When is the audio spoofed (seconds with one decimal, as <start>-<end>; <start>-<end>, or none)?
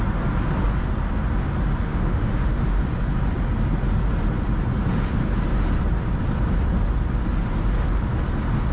1.9-2.8